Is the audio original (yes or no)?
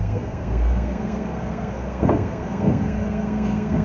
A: no